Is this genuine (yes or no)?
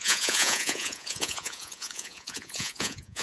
no